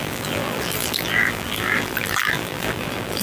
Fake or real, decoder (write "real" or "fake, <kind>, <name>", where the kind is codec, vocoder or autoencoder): fake, vocoder, BigVGAN v2